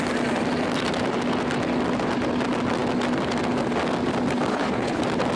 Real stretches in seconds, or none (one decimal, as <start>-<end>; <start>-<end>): 0.0-4.5; 5.0-5.4

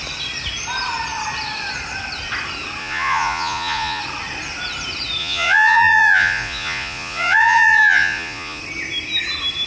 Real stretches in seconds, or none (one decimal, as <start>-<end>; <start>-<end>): 0.0-2.8; 4.0-5.2; 8.6-9.7

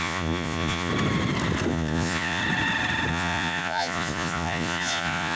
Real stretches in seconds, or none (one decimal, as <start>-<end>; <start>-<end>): 0.9-1.7; 2.4-3.1

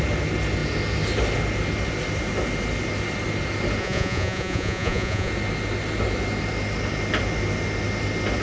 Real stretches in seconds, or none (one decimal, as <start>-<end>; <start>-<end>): 0.0-3.8; 5.3-8.4

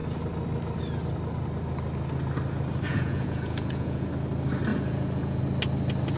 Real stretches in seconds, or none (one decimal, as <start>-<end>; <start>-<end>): 0.0-2.9; 4.1-4.7; 5.4-6.2

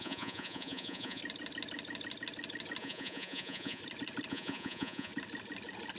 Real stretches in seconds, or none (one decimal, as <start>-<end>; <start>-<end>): 1.2-2.8; 3.8-4.3; 5.1-6.0